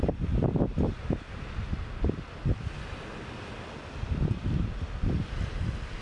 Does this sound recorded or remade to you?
recorded